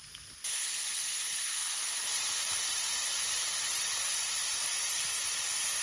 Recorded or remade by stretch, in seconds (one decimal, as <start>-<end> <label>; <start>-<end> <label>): 0.0-5.8 recorded